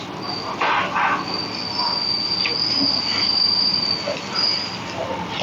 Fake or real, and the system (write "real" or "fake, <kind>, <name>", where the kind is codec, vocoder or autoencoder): real